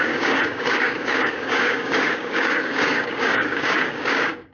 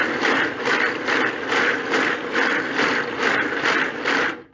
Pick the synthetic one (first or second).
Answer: first